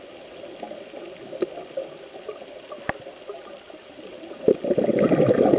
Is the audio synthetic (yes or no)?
no